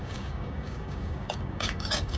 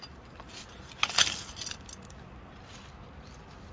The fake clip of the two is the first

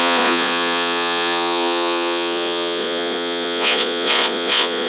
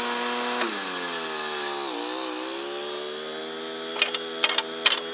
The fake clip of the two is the first